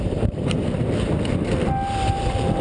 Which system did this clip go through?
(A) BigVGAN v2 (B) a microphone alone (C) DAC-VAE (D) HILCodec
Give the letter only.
A